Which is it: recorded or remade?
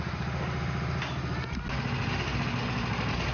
recorded